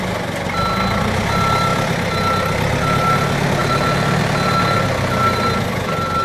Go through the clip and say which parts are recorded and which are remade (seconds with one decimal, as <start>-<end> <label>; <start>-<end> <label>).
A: 0.0-6.2 recorded